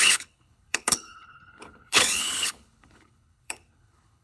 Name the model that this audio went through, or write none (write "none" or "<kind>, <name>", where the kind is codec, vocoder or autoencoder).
codec, HILCodec